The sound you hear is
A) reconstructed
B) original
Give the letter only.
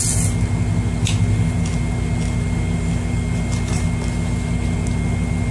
B